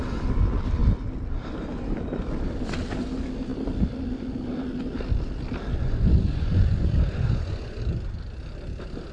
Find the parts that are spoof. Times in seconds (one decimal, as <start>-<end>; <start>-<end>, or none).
5.7-7.8